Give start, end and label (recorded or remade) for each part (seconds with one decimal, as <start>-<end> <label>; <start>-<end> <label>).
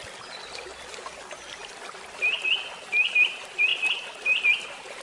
0.0-2.8 recorded; 2.8-3.7 remade; 3.7-4.4 recorded; 4.4-5.0 remade